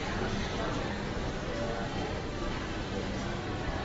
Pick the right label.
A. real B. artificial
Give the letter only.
A